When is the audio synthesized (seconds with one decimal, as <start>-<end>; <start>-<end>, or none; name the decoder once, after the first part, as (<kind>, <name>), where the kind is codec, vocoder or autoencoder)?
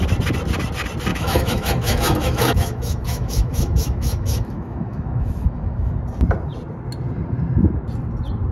1.1-6.0 (autoencoder, DAC-VAE)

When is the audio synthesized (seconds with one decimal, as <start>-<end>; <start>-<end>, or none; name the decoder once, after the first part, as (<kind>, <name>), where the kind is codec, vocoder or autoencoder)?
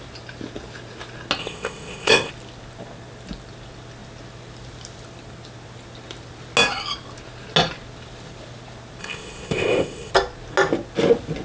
1.4-2.3 (codec, ZipCodec); 9.0-10.1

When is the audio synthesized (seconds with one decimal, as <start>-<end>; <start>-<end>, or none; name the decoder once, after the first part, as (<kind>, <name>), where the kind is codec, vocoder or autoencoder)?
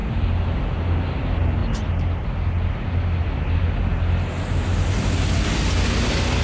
none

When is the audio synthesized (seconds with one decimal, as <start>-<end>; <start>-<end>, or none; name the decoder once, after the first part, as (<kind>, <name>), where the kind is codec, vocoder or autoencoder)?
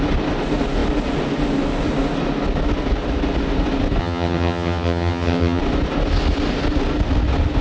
4.0-5.6 (vocoder, HiFi-GAN)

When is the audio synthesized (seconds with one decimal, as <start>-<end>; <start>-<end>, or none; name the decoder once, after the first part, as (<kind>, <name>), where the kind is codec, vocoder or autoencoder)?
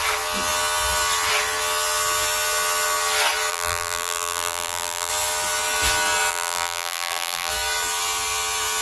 3.5-5.1 (vocoder, BigVGAN v2); 6.3-7.5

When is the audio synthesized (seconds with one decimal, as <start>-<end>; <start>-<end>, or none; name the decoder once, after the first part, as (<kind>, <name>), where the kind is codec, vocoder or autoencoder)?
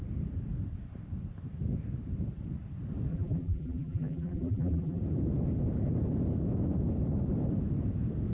3.1-5.0 (vocoder, BigVGAN v2)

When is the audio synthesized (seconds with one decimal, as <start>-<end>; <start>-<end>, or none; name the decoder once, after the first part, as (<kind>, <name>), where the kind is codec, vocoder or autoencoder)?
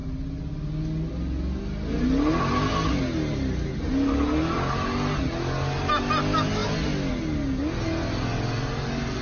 none